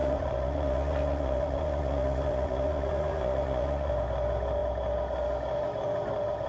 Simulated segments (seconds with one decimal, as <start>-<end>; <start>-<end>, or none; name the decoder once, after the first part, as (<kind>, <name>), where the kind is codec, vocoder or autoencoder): 0.0-3.9 (vocoder, Vocos)